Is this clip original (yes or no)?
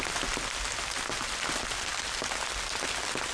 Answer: yes